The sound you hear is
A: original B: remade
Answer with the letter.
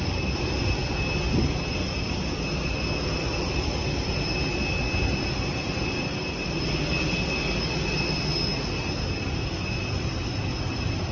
A